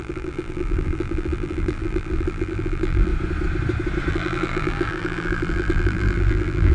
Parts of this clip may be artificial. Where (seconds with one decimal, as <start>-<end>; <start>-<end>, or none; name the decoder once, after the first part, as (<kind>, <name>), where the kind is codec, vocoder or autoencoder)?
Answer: 0.0-3.1 (vocoder, BigVGAN v2); 4.1-6.7